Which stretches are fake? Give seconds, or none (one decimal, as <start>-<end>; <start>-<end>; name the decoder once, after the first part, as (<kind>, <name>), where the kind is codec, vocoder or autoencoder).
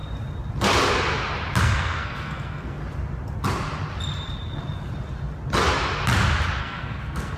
1.6-2.8 (codec, SNAC); 6.6-7.4